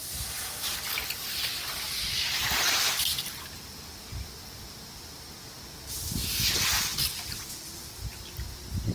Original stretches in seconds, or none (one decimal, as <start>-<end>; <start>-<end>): 0.0-8.9